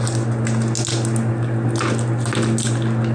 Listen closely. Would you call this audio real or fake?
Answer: real